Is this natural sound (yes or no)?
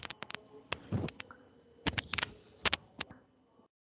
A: yes